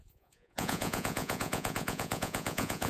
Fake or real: fake